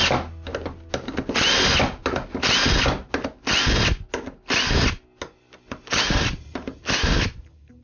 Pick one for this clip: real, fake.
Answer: real